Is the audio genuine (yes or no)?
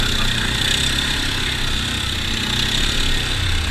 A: yes